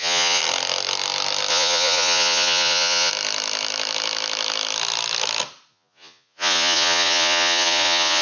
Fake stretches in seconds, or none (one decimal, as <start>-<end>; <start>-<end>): 0.0-0.4; 1.5-3.1; 5.7-8.2